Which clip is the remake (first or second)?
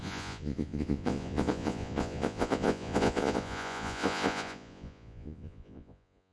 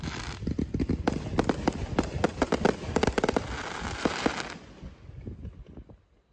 first